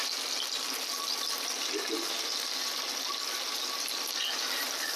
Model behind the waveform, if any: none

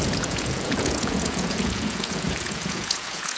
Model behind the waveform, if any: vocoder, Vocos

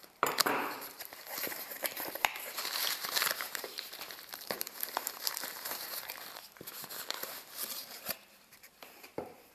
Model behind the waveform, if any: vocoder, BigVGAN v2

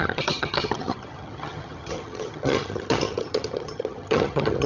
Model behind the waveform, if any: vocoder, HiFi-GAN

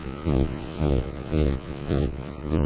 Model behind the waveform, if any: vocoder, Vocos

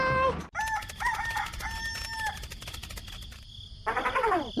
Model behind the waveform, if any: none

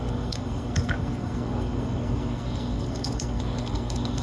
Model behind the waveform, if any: codec, SNAC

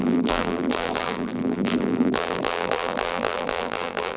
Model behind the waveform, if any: vocoder, BigVGAN v2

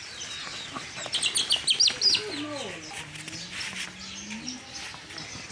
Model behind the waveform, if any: none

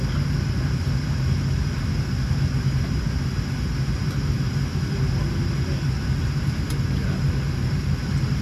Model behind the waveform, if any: none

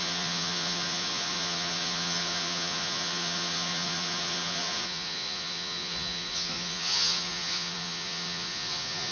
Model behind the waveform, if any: vocoder, Vocos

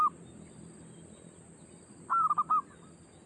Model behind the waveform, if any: none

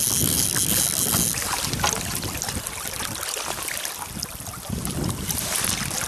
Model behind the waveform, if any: none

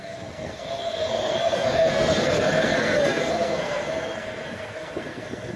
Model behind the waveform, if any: codec, SNAC